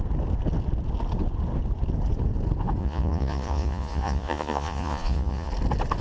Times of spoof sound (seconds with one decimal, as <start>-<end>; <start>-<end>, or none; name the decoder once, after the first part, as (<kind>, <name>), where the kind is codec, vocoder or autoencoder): 2.8-5.5 (vocoder, Vocos)